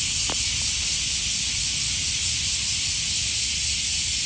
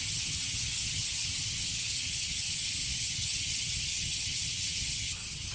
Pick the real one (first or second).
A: first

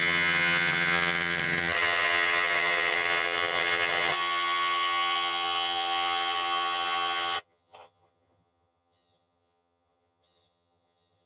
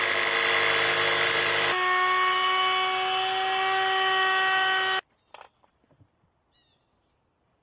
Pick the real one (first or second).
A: second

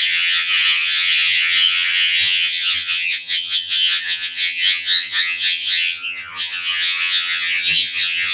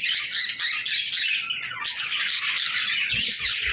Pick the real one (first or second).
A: second